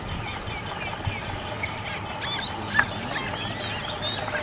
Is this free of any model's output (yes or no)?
yes